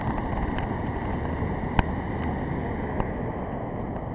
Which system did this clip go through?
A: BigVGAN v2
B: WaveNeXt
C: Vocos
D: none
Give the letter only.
D